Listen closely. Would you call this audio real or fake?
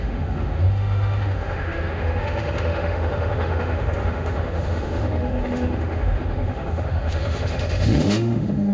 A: fake